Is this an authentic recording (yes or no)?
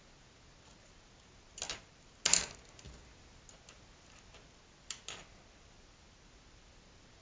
yes